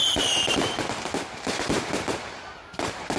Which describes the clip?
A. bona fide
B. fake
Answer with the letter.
B